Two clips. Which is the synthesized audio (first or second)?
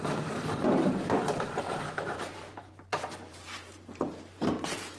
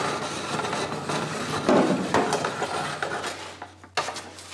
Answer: first